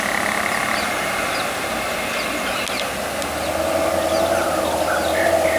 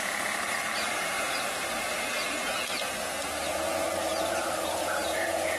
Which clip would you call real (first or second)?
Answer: first